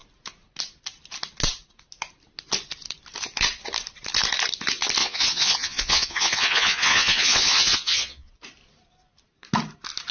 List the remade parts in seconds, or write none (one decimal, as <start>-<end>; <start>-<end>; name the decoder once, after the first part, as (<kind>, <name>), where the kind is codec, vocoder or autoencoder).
5.0-8.3 (vocoder, Vocos)